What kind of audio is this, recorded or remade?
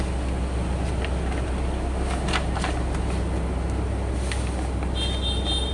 recorded